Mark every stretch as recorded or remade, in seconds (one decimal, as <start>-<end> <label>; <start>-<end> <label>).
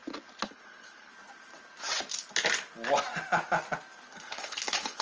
0.0-0.5 recorded; 0.5-1.1 remade; 1.1-4.1 recorded; 4.1-5.0 remade